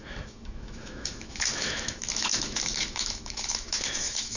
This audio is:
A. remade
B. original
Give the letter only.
A